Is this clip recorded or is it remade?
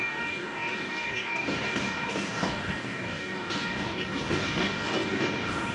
remade